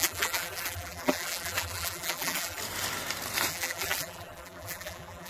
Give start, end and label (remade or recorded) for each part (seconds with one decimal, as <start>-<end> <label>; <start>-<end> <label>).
0.0-2.6 remade; 2.6-3.5 recorded; 3.5-5.3 remade